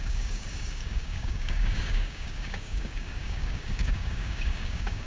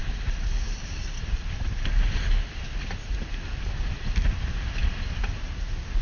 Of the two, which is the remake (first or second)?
first